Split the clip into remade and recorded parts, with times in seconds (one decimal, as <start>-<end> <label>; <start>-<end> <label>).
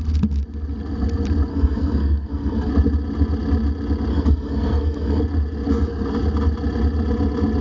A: 0.0-1.5 recorded; 1.5-2.7 remade; 2.7-4.1 recorded; 4.1-5.2 remade; 5.2-7.6 recorded